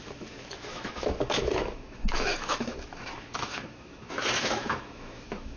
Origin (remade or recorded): remade